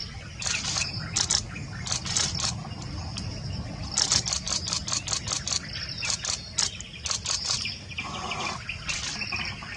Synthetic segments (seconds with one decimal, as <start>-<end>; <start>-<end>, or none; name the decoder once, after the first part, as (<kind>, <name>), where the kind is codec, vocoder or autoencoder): none